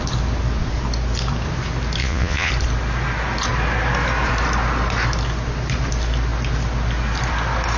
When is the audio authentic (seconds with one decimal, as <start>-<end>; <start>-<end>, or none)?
0.0-2.0; 2.5-7.8